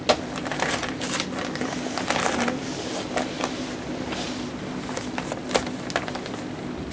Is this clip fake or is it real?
real